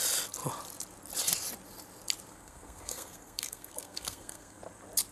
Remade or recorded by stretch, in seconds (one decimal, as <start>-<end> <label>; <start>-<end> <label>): 0.0-2.3 recorded; 2.3-4.6 remade; 4.6-5.1 recorded

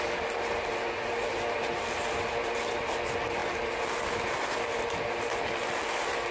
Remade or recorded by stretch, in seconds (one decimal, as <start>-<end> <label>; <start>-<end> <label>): 0.0-6.3 recorded